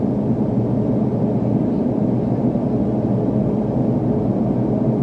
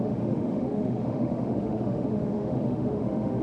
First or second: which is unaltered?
first